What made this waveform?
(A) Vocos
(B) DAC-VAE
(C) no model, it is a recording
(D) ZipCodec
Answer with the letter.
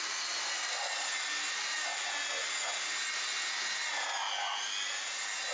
C